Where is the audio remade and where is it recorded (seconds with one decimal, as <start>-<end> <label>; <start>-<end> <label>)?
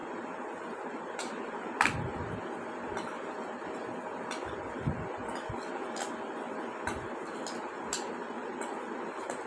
0.0-9.5 recorded